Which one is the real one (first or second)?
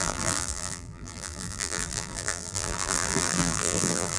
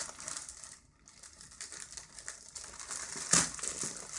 second